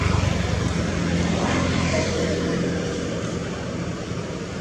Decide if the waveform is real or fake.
real